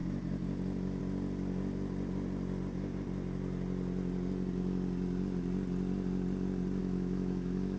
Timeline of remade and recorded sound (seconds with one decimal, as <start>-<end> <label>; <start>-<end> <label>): 0.0-6.8 recorded; 6.8-7.8 remade